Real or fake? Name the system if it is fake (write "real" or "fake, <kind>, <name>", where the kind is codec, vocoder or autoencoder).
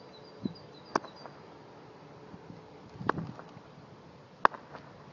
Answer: real